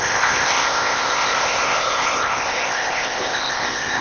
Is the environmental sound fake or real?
fake